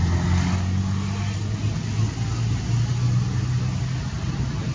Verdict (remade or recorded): recorded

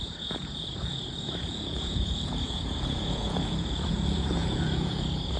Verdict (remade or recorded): remade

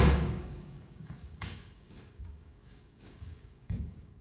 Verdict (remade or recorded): remade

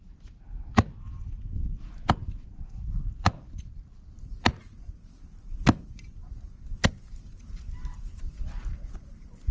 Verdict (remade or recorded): recorded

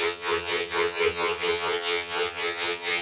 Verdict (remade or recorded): remade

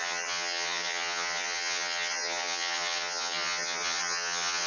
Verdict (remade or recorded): remade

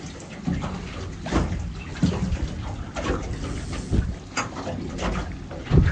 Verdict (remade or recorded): recorded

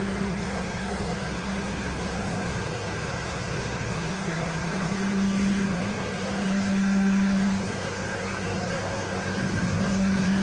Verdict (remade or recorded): remade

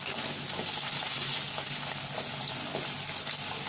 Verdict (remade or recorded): recorded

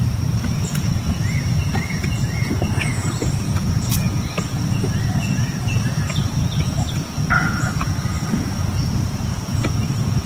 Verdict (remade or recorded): remade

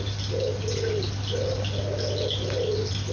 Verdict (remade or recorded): recorded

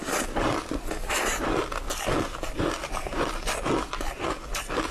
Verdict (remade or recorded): recorded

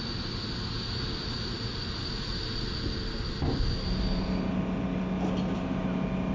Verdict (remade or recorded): recorded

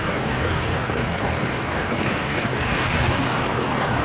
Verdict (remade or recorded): remade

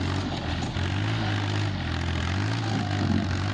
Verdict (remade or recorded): recorded